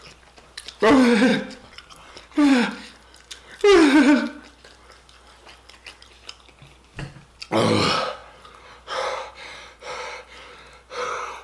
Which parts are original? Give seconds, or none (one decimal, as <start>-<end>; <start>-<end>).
0.0-1.3; 2.5-8.2; 9.8-11.4